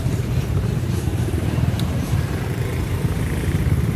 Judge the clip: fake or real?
fake